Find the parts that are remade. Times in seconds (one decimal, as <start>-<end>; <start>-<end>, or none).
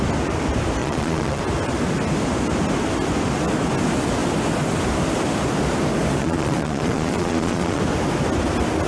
0.8-1.4; 6.2-7.8